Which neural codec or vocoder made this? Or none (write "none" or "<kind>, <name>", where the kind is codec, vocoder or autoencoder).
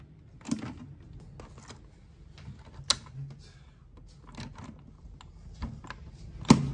none